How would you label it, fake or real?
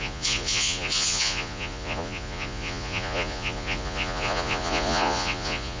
fake